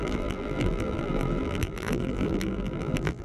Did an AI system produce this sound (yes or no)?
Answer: yes